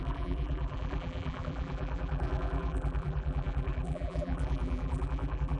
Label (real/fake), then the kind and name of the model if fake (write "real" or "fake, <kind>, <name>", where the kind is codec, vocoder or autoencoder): fake, vocoder, BigVGAN v2